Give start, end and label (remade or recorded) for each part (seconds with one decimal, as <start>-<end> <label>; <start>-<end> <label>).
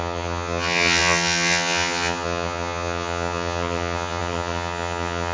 0.0-5.3 remade